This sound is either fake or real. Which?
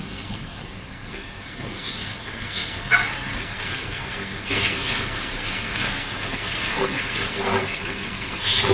fake